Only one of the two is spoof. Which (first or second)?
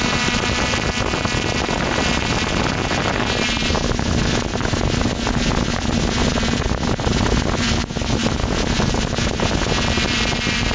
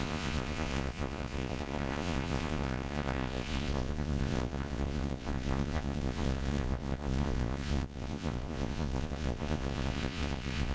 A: second